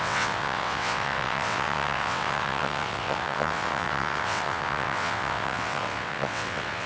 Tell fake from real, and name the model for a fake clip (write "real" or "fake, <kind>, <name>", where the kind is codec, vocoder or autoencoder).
fake, vocoder, WaveNeXt